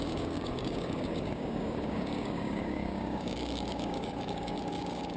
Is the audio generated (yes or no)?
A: yes